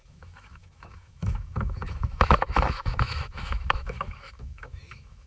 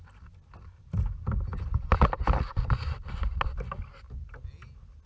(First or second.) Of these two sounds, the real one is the second